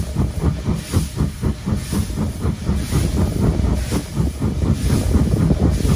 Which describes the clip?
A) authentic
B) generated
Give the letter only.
A